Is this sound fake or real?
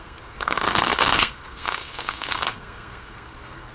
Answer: fake